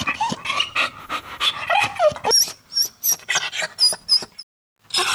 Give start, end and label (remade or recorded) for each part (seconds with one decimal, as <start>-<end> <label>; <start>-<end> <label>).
0.0-1.0 recorded; 1.0-1.5 remade; 1.5-5.1 recorded